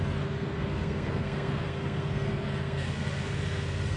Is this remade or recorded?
remade